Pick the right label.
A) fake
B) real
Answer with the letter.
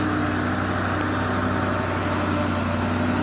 B